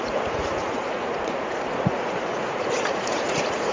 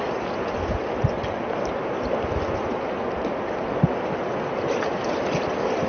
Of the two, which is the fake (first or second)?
first